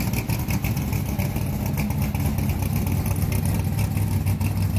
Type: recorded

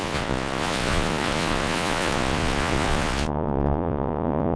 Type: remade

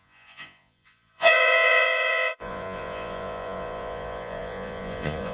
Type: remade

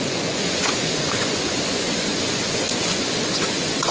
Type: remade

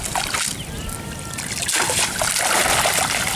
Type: recorded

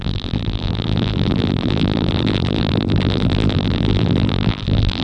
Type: remade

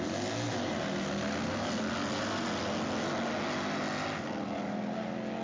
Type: recorded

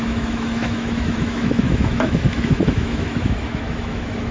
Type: remade